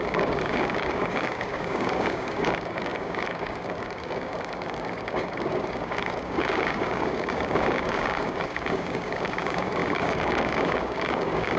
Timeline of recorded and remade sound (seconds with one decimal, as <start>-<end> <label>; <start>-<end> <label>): 0.0-11.6 remade